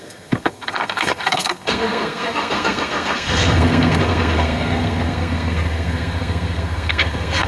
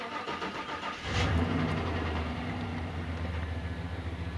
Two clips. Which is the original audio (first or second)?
second